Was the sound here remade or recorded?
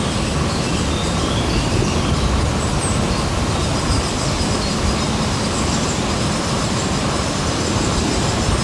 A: recorded